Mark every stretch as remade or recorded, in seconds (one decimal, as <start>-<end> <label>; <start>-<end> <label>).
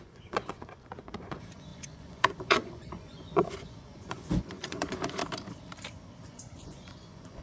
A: 0.0-5.2 remade; 5.2-6.3 recorded; 6.3-7.4 remade